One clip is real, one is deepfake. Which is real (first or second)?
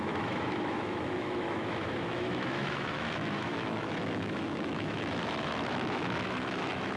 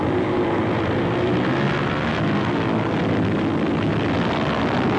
second